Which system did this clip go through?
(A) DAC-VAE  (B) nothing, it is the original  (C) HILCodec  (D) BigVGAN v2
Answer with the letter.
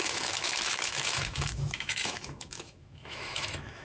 A